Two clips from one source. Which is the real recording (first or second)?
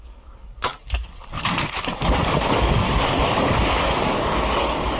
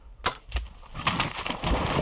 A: second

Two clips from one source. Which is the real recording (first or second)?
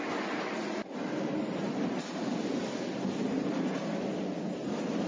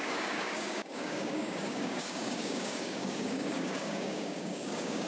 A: first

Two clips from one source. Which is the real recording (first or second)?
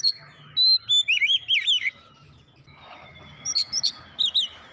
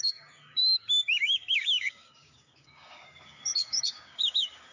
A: first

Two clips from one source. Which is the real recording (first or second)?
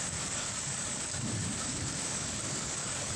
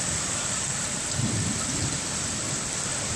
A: second